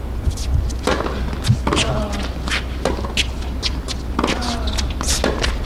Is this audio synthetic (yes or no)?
no